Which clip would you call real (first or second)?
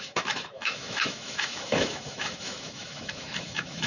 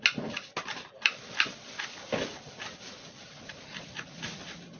second